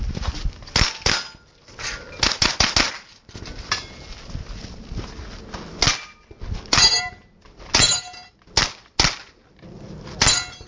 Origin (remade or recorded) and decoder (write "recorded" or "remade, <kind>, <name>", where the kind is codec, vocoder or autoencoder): recorded